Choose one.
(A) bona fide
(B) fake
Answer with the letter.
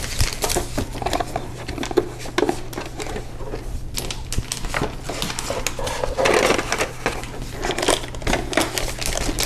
A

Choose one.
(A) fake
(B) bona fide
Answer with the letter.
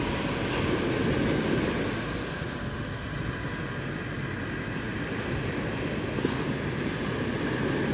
B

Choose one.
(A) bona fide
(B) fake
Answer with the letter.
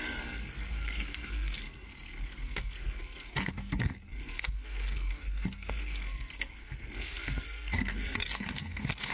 B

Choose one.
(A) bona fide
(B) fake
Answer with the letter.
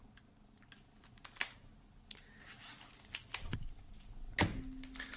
A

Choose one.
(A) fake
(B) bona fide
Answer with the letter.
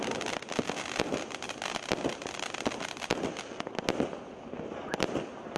B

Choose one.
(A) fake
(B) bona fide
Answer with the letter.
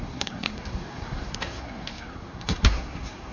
A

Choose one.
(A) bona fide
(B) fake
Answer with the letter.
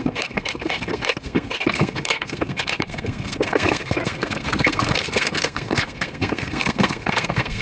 B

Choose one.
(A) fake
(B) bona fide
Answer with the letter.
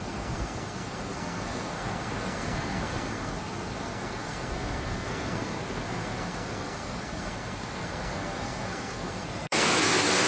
A